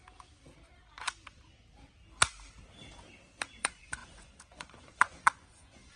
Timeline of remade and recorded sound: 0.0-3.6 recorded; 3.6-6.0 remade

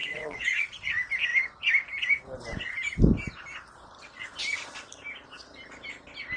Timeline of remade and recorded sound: 0.0-0.9 remade; 0.9-6.4 recorded

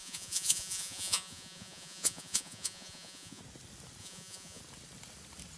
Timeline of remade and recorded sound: 0.0-3.4 remade; 3.4-4.0 recorded; 4.0-4.6 remade; 4.6-5.6 recorded

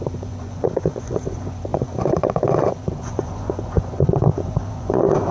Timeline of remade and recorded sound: 0.0-5.3 remade

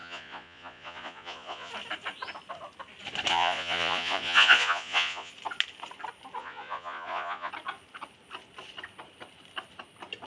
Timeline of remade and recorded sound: 0.0-1.7 remade; 1.7-3.3 recorded; 3.3-5.3 remade; 5.3-6.4 recorded; 6.4-7.5 remade; 7.5-10.3 recorded

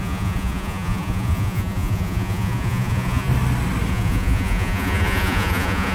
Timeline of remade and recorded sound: 0.0-3.3 remade; 3.3-3.9 recorded; 3.9-5.9 remade

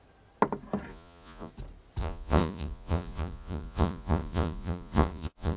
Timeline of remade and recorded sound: 0.0-0.9 recorded; 0.9-1.5 remade; 1.5-2.0 recorded; 2.0-5.6 remade

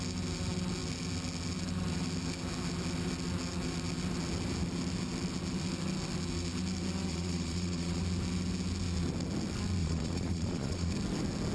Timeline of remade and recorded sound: 0.0-7.1 recorded; 7.1-8.0 remade; 8.0-9.8 recorded; 9.8-10.9 remade; 10.9-11.5 recorded